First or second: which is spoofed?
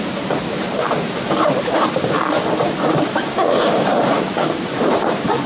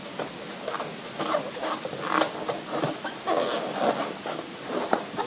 first